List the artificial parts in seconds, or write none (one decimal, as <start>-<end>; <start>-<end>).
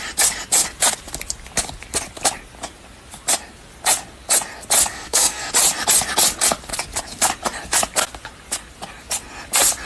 4.9-5.5